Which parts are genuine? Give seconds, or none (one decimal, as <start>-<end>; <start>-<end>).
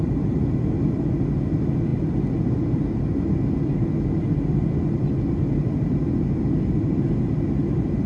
0.0-8.1